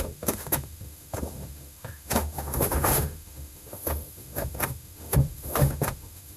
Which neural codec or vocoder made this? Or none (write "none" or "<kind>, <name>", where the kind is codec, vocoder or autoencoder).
autoencoder, DAC-VAE